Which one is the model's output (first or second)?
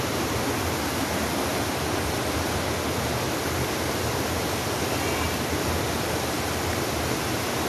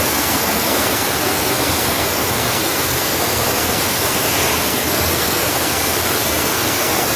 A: second